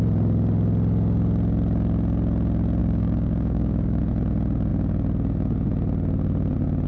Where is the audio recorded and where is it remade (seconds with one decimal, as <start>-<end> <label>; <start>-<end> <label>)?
0.0-2.8 recorded; 2.8-4.0 remade; 4.0-6.9 recorded